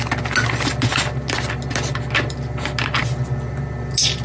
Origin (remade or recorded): recorded